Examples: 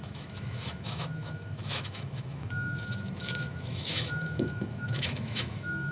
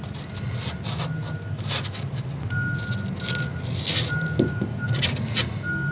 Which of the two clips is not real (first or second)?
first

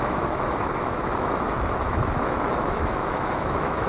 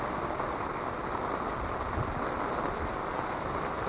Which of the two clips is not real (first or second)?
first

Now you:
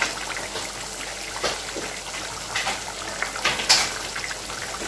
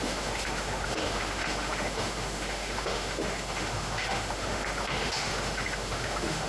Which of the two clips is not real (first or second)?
second